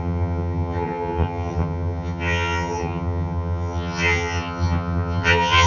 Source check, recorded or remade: remade